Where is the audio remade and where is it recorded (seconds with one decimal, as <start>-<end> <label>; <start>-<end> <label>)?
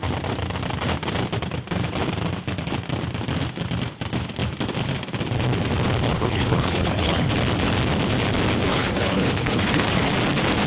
0.0-6.1 recorded; 6.1-7.3 remade; 7.3-8.7 recorded; 8.7-10.1 remade; 10.1-10.7 recorded